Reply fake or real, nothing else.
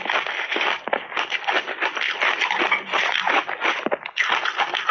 real